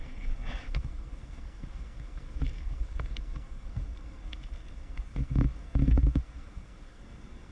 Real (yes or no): no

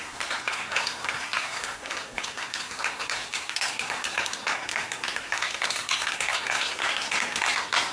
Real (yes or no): no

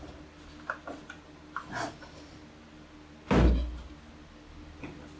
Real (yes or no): yes